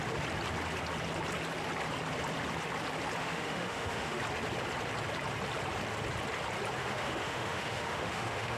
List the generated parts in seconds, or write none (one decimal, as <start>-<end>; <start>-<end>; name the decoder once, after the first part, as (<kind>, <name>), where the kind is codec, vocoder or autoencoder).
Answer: 3.2-4.2 (autoencoder, DAC-VAE); 6.8-8.6